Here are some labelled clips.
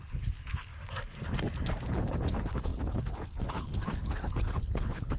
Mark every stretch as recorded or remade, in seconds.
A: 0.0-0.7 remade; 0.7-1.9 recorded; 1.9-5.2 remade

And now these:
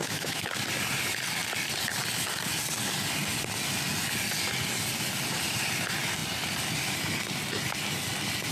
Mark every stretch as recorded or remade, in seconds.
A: 0.0-0.5 remade; 0.5-8.5 recorded